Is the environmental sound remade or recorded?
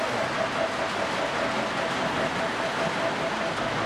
recorded